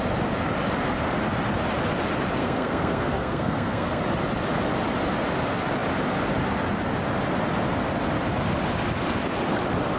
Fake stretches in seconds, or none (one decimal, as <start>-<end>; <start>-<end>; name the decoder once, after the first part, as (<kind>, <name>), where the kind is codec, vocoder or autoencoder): 2.4-4.0 (codec, SNAC)